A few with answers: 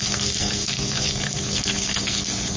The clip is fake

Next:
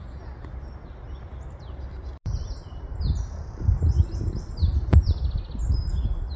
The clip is real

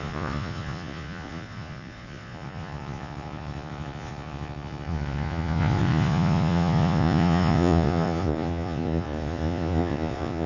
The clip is fake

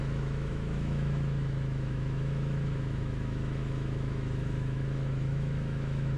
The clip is fake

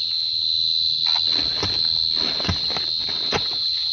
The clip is real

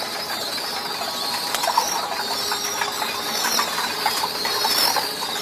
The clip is fake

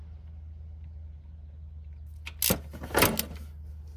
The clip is real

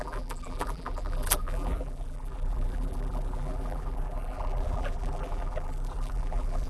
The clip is fake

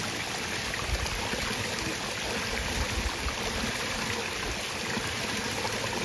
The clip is real